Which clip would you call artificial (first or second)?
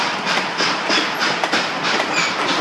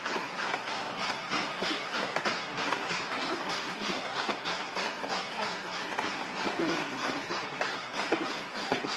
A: second